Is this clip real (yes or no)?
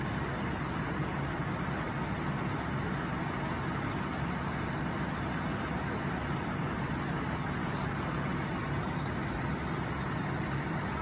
yes